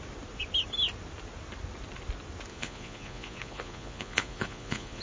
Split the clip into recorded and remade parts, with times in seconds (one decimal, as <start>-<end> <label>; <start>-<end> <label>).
0.0-2.5 recorded; 2.5-5.0 remade